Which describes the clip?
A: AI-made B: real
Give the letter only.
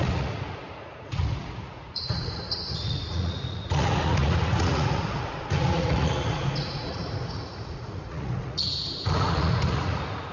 A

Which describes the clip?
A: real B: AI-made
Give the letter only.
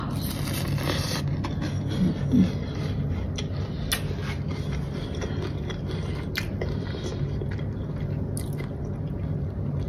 A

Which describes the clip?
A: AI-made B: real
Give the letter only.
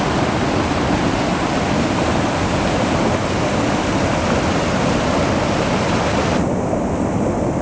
B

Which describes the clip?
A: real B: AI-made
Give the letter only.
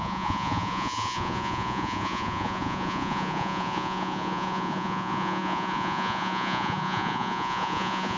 B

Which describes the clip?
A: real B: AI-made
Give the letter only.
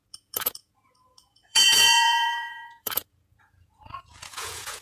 B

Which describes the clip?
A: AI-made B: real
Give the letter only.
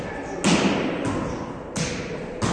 B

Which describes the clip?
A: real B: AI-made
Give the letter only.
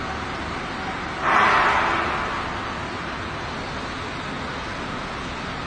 A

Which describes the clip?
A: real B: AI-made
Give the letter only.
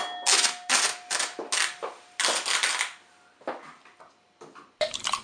A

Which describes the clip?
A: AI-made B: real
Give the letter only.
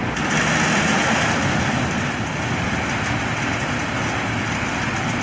B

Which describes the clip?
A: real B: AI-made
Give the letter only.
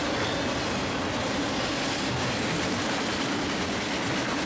A